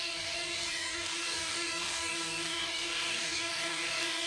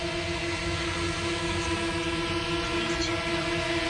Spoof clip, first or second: first